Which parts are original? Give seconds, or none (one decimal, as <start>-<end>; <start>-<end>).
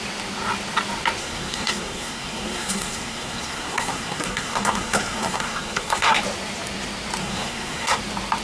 0.0-1.2; 6.2-7.2; 8.0-8.4